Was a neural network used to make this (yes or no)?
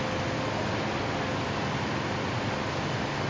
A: no